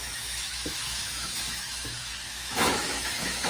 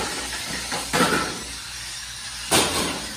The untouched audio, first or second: second